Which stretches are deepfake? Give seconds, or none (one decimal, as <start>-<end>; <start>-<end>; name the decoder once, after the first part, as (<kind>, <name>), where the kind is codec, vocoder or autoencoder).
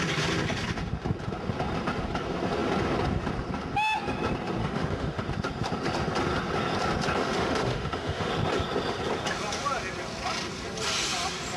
4.6-5.2 (autoencoder, DAC-VAE); 7.2-8.3